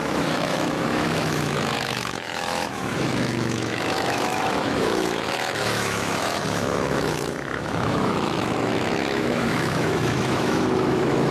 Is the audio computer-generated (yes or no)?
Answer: yes